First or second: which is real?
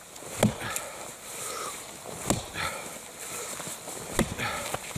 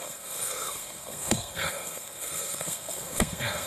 first